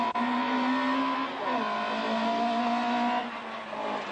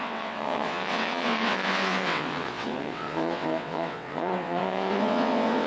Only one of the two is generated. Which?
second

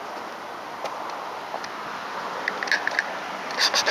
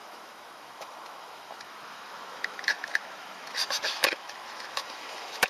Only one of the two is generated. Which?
second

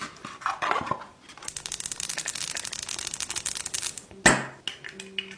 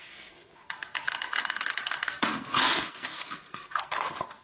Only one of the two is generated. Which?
second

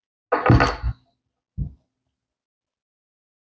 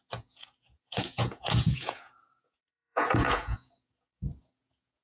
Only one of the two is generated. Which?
second